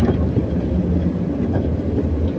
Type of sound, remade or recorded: recorded